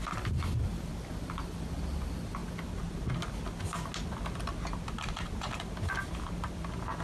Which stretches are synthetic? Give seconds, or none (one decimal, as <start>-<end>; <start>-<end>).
none